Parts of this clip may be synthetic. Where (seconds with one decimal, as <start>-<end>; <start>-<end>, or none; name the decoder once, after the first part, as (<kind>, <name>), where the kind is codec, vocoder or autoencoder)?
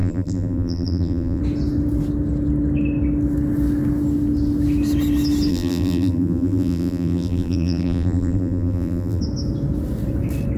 0.0-1.4 (vocoder, BigVGAN v2); 5.5-9.2